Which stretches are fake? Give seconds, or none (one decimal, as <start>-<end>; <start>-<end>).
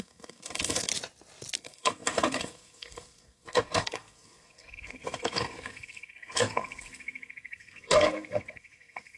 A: 0.0-0.9; 1.6-9.2